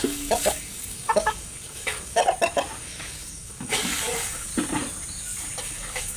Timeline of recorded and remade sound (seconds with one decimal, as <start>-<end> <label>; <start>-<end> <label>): 0.0-2.2 remade; 2.2-2.8 recorded; 2.8-4.5 remade; 4.5-5.6 recorded; 5.6-6.2 remade